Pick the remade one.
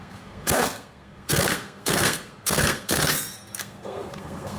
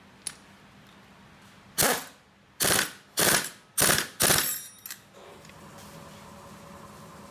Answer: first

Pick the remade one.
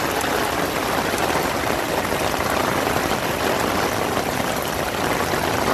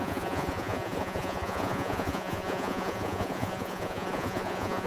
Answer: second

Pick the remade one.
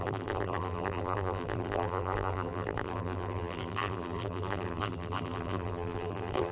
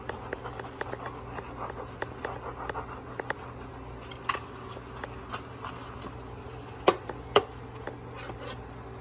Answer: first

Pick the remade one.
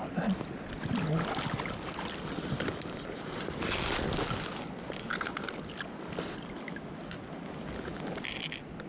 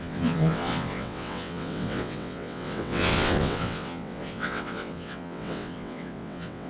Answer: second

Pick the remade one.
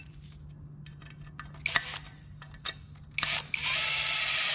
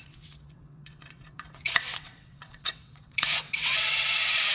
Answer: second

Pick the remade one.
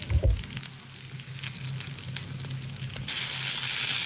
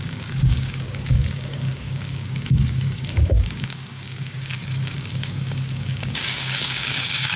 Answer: second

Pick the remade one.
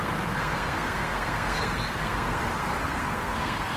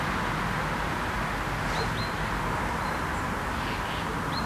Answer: first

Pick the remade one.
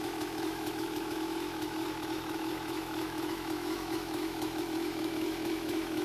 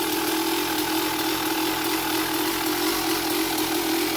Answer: first